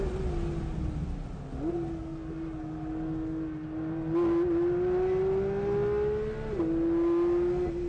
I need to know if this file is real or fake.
real